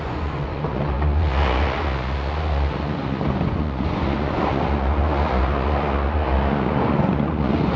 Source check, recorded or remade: remade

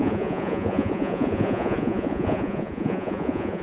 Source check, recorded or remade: remade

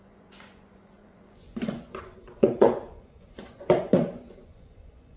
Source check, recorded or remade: remade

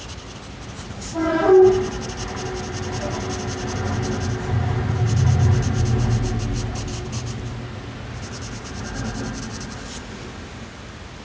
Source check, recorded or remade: recorded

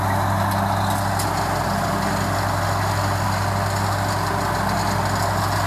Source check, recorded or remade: recorded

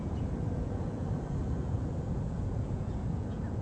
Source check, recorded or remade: remade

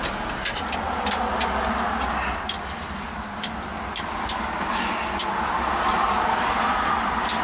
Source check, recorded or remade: recorded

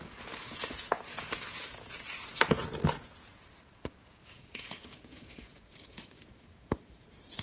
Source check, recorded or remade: remade